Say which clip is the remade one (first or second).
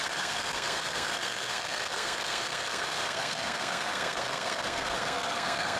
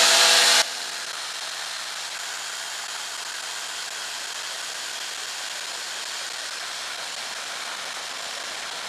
first